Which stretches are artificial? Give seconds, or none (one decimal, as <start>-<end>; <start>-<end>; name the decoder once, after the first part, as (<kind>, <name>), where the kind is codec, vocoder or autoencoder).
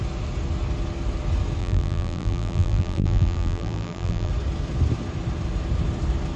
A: 1.6-4.3 (vocoder, BigVGAN v2)